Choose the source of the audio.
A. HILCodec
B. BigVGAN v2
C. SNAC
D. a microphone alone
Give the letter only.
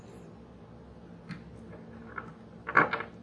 D